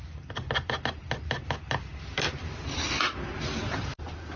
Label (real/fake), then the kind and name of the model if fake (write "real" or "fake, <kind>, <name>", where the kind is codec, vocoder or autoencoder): real